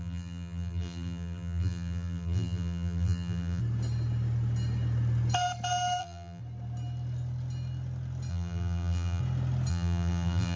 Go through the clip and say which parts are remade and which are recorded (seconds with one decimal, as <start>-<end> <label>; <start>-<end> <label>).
0.0-3.6 remade; 3.6-6.0 recorded; 6.0-6.4 remade; 6.4-8.3 recorded; 8.3-9.2 remade; 9.2-9.7 recorded; 9.7-10.6 remade